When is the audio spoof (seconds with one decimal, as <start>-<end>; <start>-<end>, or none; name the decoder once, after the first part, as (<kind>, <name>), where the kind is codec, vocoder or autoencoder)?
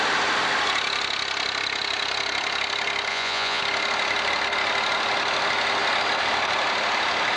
3.1-3.6 (vocoder, Vocos)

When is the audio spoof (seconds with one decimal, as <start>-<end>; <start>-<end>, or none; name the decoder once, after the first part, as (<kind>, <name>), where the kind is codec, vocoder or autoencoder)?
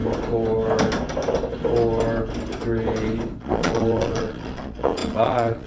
3.4-5.7 (vocoder, Vocos)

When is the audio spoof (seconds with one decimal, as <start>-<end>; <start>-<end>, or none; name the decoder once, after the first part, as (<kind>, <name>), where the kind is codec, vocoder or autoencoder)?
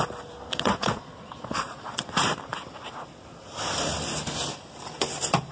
0.5-2.0 (vocoder, Vocos)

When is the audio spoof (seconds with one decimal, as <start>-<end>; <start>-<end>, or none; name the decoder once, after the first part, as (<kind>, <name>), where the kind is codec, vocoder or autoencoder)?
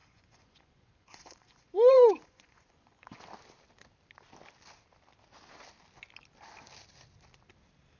0.0-3.2 (vocoder, Vocos)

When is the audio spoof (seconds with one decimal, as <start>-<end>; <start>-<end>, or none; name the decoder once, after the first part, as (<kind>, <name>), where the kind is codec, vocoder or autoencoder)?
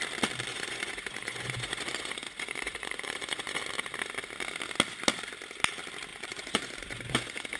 0.5-3.6 (vocoder, Vocos); 6.1-7.6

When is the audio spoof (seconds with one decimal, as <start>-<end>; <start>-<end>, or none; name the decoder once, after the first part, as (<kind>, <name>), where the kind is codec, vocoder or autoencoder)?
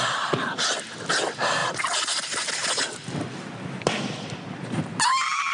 none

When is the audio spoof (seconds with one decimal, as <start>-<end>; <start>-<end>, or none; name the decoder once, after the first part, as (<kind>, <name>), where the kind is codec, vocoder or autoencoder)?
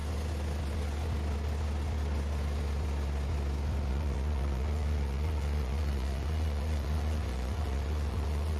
3.9-8.6 (vocoder, Vocos)